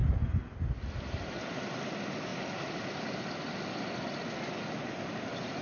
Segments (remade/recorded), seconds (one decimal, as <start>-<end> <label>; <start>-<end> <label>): 0.0-5.6 recorded